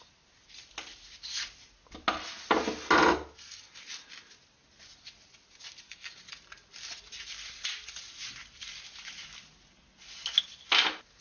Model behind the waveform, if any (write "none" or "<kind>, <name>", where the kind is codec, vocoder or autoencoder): none